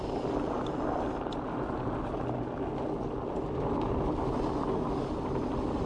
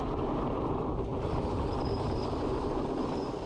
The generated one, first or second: second